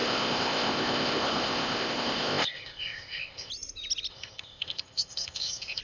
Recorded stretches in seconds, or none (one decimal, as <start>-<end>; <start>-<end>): 3.5-4.1